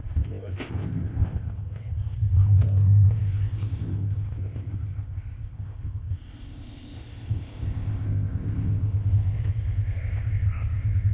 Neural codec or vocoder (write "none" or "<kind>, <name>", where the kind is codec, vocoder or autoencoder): codec, ZipCodec